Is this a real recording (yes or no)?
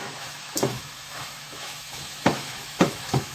no